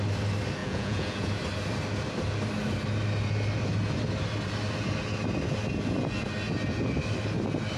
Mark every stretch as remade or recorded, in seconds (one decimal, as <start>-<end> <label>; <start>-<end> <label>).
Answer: 0.0-0.6 recorded; 0.6-1.3 remade; 1.3-7.8 recorded